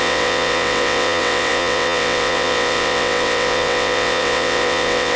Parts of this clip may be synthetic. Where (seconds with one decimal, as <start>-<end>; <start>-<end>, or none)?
0.0-5.2